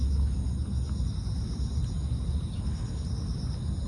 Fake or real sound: real